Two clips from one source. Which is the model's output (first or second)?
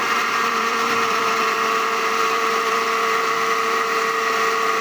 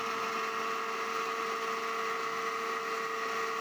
first